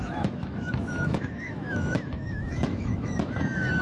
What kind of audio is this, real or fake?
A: fake